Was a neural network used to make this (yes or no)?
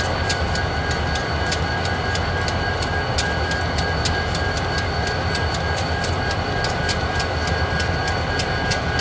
no